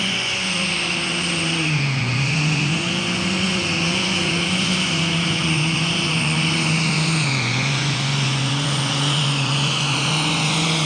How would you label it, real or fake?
fake